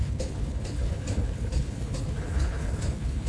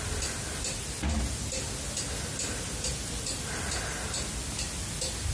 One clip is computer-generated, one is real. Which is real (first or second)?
second